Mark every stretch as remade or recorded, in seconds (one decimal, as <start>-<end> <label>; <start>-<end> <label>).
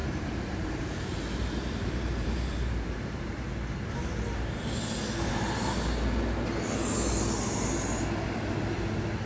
0.0-3.2 remade; 3.2-9.3 recorded